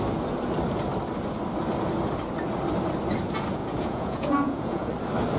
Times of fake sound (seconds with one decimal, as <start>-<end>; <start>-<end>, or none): 3.6-4.9